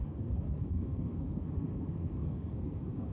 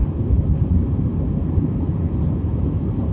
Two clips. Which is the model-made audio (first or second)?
first